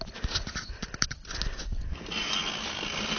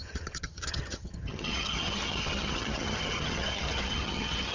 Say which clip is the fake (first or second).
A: second